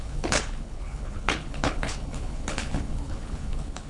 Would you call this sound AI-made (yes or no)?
yes